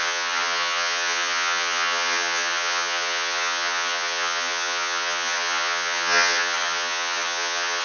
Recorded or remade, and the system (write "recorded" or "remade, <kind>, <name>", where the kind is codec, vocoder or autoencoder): remade, vocoder, HiFi-GAN